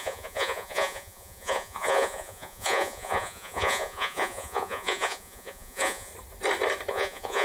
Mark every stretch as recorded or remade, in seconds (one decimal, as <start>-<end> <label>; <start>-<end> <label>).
0.0-6.1 remade; 6.1-6.9 recorded; 6.9-7.4 remade